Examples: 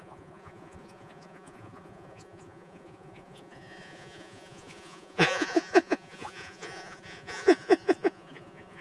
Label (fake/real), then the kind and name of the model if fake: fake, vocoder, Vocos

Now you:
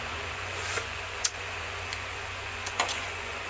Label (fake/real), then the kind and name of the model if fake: fake, vocoder, Vocos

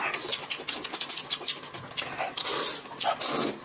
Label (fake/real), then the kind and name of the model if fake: real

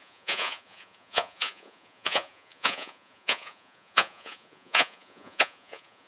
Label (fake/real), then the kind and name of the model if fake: fake, vocoder, Vocos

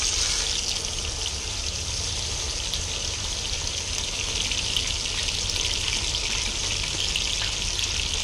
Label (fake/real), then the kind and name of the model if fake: real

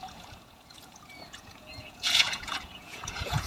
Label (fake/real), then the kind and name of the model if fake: fake, vocoder, Vocos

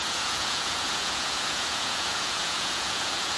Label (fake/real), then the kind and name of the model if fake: fake, vocoder, Vocos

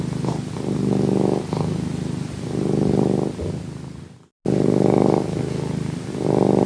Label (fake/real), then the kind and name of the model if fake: real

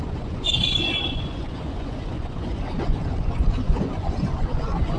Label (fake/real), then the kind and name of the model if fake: fake, vocoder, Vocos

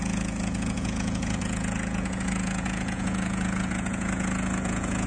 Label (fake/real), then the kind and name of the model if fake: fake, vocoder, Vocos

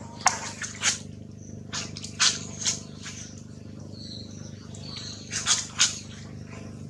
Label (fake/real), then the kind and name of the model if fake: real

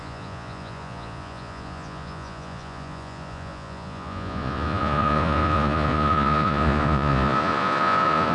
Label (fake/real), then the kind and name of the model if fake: fake, vocoder, Vocos